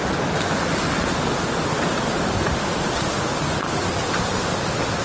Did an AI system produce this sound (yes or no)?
no